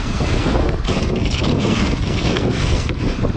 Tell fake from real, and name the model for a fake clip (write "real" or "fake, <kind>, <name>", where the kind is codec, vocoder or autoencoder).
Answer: fake, codec, SNAC